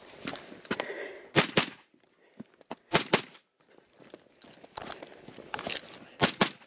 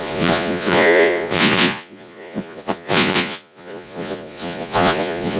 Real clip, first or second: first